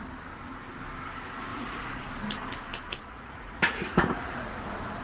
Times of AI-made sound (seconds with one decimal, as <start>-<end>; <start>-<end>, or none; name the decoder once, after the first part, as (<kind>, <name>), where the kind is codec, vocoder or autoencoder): 1.5-2.1 (vocoder, Vocos); 3.1-4.5